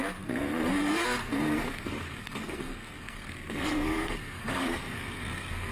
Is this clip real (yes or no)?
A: no